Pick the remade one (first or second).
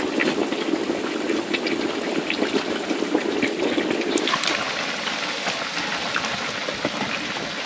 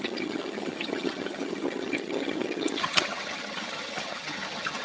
second